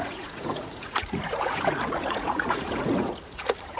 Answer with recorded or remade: remade